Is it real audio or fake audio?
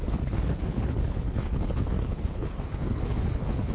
fake